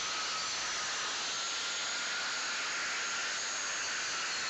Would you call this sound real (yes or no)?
yes